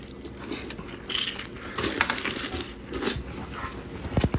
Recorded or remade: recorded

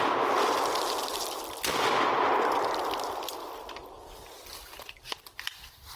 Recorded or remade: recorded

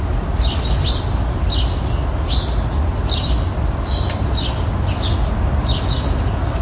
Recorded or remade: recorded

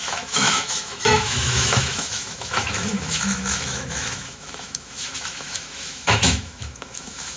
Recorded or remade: remade